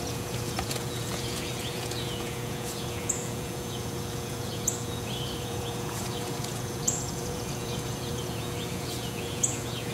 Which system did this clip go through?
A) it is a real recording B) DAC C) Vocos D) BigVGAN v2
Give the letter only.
C